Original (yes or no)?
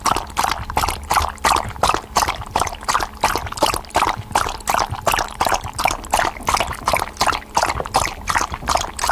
yes